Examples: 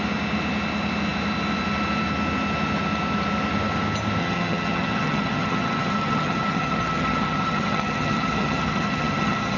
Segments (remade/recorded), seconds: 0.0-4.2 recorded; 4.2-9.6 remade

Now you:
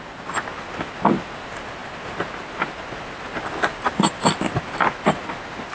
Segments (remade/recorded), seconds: 0.0-5.7 recorded

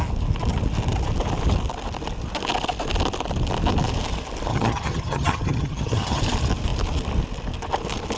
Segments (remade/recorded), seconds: 0.0-4.5 recorded; 4.5-6.2 remade; 6.2-8.2 recorded